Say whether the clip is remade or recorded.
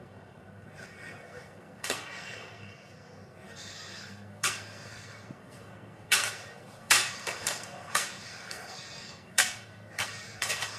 remade